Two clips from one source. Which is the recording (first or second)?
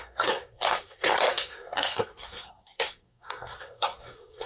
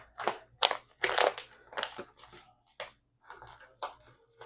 second